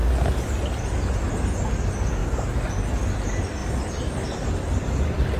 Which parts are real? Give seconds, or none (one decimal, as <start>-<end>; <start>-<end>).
0.0-3.6; 4.5-5.4